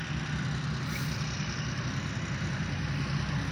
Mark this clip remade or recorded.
recorded